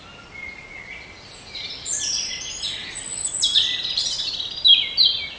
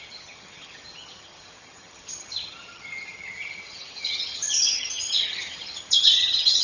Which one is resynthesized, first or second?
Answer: second